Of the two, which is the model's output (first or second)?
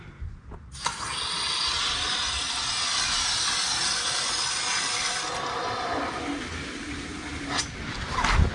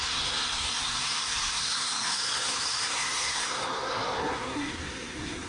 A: second